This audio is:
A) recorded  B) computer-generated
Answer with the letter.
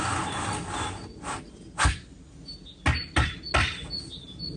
A